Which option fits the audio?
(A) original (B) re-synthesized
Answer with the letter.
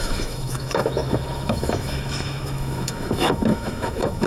B